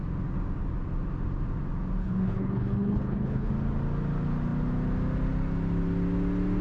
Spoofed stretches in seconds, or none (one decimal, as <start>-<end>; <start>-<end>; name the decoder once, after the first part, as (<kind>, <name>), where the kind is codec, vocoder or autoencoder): 2.0-3.5 (codec, HILCodec)